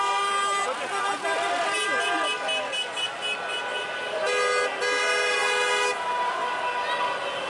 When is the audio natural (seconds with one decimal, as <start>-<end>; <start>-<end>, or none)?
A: 0.0-7.5